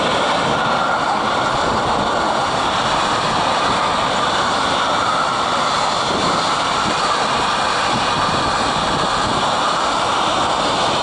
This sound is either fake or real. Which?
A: real